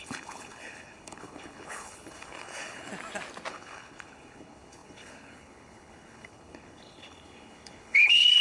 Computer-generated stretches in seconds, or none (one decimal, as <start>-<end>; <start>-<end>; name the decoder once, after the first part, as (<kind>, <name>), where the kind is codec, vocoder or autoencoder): 0.0-2.9 (codec, HILCodec); 3.5-8.4